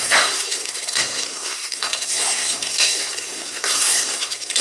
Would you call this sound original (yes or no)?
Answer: no